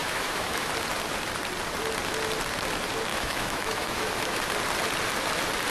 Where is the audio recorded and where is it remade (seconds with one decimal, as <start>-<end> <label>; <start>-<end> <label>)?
0.0-0.7 remade; 0.7-3.1 recorded; 3.1-4.4 remade; 4.4-5.7 recorded